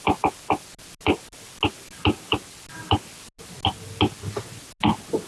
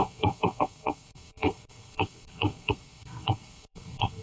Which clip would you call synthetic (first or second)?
second